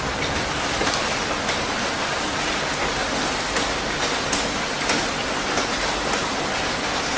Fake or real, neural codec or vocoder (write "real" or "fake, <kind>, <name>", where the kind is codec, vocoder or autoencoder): real